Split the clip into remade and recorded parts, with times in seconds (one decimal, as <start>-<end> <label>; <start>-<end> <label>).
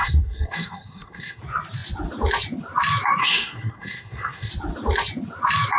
0.0-1.4 remade; 1.4-3.2 recorded; 3.2-4.5 remade; 4.5-5.8 recorded